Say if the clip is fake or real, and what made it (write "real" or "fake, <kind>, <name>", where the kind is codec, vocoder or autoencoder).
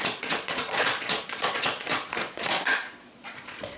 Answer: fake, vocoder, Vocos